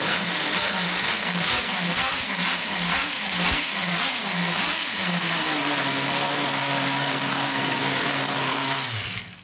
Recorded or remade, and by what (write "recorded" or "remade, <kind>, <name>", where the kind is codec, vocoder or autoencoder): remade, codec, SNAC